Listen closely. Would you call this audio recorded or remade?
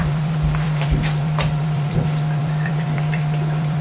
remade